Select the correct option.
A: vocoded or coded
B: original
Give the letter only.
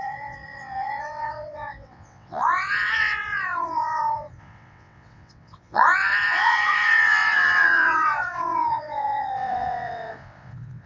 A